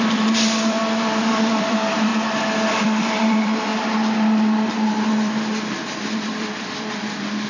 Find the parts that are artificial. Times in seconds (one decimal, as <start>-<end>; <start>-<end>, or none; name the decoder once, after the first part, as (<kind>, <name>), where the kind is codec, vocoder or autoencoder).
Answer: 0.0-2.1 (vocoder, BigVGAN v2); 2.7-3.7; 4.4-7.5